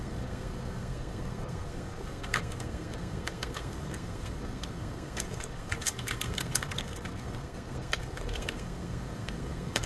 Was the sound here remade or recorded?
remade